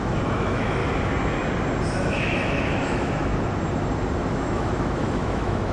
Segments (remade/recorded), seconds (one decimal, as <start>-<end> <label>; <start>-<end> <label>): 0.0-0.8 remade; 0.8-2.2 recorded; 2.2-3.3 remade; 3.3-4.3 recorded; 4.3-5.7 remade